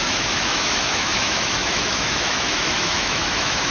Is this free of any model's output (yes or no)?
no